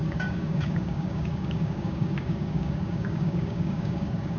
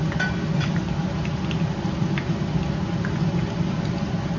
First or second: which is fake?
first